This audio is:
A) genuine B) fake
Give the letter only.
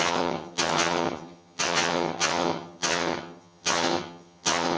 B